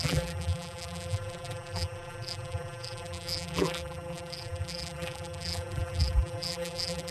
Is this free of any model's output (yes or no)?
no